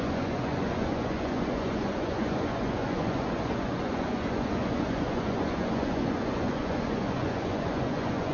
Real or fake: fake